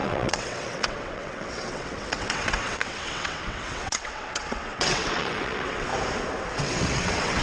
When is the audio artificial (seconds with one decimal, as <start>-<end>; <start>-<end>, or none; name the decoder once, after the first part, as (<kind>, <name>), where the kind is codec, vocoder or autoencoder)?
0.0-5.9 (vocoder, WaveNeXt); 6.6-7.4